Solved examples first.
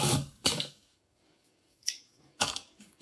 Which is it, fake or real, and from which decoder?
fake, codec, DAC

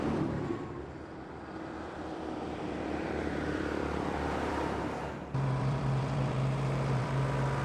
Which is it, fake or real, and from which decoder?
fake, vocoder, BigVGAN v2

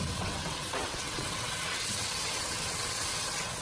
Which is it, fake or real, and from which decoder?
fake, vocoder, WaveNeXt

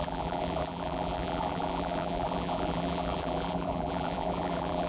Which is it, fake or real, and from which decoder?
fake, vocoder, BigVGAN v2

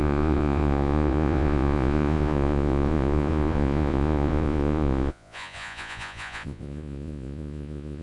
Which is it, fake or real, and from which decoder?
fake, vocoder, Vocos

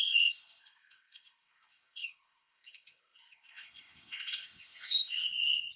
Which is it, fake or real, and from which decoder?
fake, codec, ZipCodec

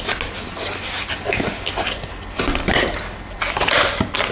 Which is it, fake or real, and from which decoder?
real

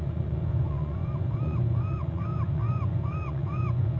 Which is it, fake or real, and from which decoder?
fake, vocoder, Vocos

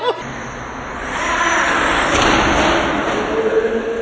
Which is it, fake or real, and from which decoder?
real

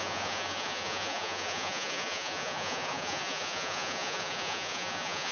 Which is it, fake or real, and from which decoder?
fake, vocoder, Vocos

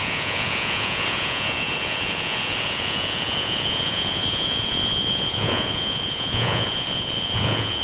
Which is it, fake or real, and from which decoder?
fake, vocoder, Vocos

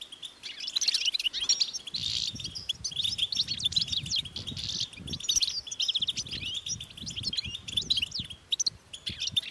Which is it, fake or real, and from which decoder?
real